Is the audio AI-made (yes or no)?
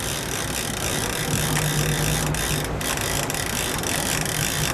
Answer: no